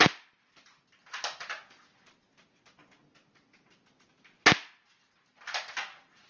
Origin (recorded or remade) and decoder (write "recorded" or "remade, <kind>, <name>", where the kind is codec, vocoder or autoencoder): recorded